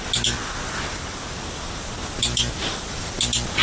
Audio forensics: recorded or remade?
recorded